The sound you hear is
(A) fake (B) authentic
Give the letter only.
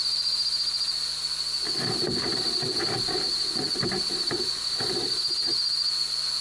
B